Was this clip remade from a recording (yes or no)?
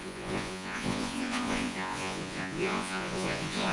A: yes